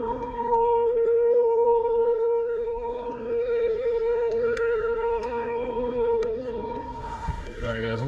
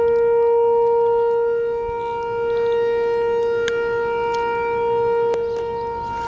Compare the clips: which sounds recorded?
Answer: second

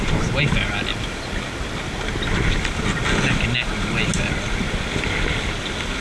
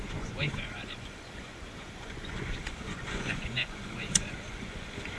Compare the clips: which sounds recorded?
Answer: first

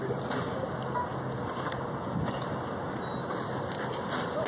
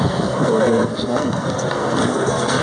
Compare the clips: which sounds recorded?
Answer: first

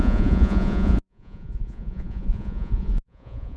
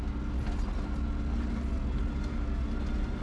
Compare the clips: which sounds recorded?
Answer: second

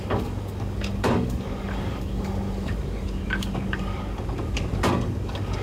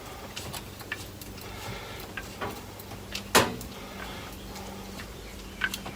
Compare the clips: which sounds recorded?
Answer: second